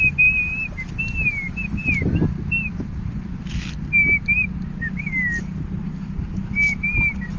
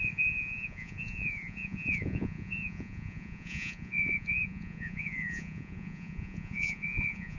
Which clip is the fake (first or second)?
second